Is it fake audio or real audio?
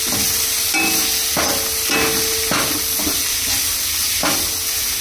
real